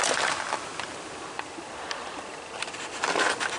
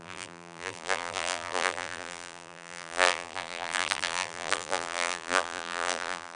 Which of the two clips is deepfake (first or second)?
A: second